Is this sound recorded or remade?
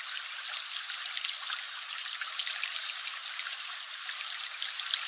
recorded